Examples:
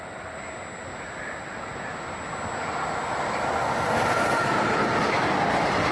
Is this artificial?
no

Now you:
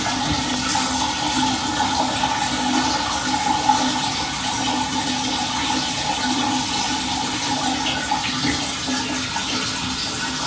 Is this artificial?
no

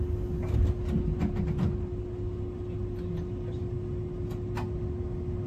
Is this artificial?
no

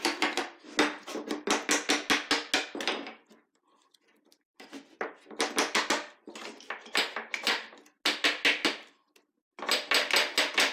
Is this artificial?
no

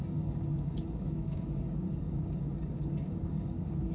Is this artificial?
yes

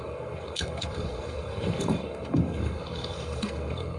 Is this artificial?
yes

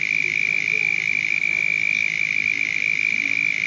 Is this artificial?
no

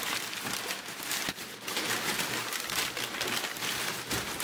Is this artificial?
no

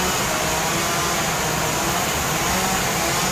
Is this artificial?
no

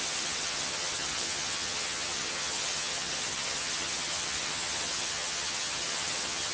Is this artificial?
yes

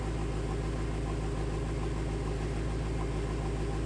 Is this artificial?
no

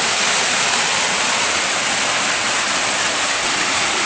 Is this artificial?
no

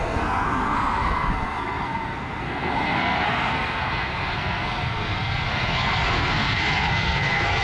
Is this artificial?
yes